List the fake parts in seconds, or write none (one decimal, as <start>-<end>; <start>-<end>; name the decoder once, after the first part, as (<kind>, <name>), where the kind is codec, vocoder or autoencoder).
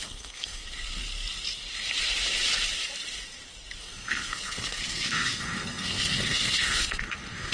0.0-0.6 (codec, SNAC); 3.8-7.5